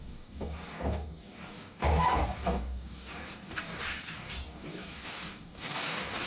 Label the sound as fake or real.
fake